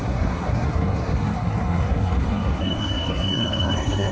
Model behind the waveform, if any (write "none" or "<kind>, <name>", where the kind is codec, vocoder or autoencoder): codec, SNAC